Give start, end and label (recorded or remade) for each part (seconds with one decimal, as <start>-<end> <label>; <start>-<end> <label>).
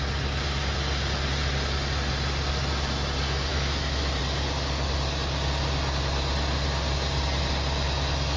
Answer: 0.0-3.5 recorded; 3.5-4.2 remade; 4.2-8.4 recorded